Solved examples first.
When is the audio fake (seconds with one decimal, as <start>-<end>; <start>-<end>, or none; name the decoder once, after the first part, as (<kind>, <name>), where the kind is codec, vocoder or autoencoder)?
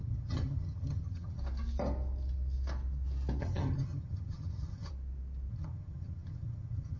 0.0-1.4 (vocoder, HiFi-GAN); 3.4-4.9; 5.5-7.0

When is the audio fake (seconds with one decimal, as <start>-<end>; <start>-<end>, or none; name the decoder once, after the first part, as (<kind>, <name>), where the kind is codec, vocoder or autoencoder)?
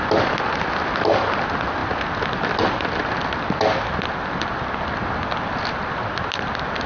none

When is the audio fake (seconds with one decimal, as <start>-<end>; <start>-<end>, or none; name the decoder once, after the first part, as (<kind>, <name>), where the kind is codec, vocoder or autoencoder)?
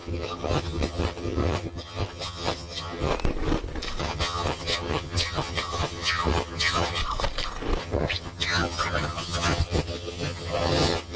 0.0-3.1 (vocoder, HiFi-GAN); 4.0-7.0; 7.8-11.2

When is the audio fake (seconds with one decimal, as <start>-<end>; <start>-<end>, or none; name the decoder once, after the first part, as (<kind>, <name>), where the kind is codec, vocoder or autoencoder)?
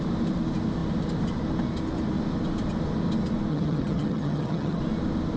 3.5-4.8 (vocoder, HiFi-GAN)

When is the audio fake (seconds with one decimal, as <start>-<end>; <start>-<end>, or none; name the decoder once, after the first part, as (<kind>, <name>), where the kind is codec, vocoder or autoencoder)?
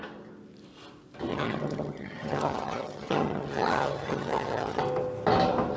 1.3-4.8 (vocoder, HiFi-GAN)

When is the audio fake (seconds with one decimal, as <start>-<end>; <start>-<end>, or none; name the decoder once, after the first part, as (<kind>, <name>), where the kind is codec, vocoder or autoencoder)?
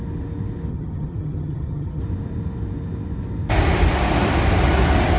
0.7-2.0 (vocoder, HiFi-GAN)